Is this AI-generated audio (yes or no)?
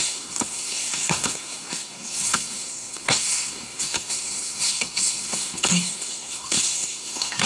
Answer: yes